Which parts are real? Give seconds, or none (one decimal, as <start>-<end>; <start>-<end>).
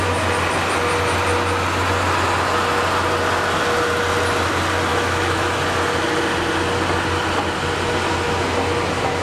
0.0-4.9; 5.6-9.2